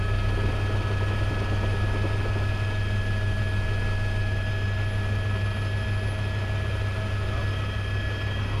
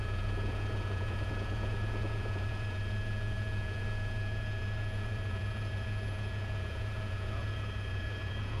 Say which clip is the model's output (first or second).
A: second